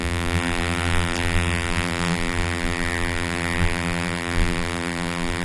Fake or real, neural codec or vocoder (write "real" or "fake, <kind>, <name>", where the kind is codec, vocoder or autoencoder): fake, vocoder, BigVGAN v2